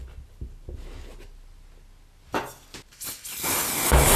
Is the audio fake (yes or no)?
no